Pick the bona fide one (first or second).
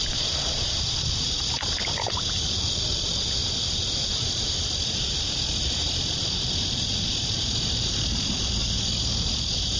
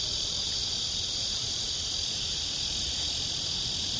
second